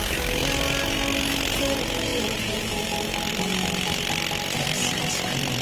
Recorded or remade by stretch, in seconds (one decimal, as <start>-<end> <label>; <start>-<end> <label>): 0.0-2.1 recorded; 2.1-2.8 remade; 2.8-5.6 recorded